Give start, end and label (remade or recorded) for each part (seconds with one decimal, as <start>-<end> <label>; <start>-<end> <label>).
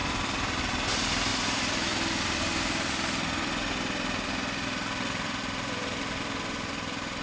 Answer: 0.0-7.2 remade